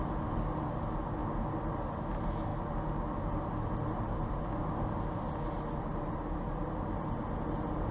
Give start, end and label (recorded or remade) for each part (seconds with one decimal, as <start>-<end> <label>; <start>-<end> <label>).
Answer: 0.0-7.9 recorded